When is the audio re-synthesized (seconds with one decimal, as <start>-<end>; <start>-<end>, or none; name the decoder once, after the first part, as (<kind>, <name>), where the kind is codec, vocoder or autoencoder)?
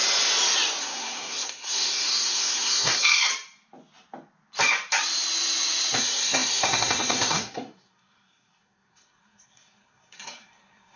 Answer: 0.8-3.3 (codec, SNAC); 6.0-11.0